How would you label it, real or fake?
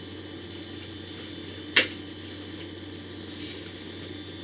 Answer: real